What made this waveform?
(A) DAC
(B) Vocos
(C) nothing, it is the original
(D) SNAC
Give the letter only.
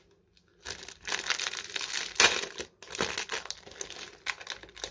C